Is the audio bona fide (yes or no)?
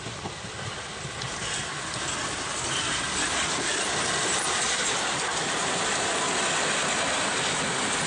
yes